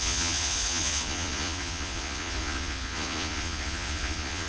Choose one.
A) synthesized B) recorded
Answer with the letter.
A